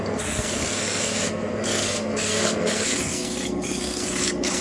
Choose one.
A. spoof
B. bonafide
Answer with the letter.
A